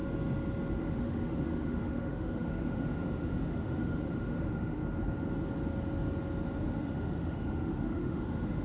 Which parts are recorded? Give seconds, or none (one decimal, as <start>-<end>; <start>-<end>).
0.0-0.8; 4.8-6.6